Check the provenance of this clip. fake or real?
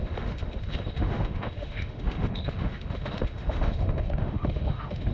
fake